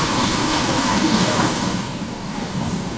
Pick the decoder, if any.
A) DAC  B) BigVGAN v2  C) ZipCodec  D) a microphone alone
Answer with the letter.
A